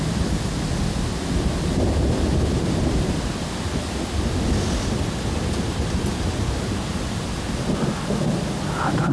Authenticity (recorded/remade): recorded